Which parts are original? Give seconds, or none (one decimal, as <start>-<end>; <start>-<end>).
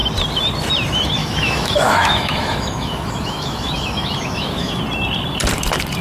0.0-1.2; 4.8-6.0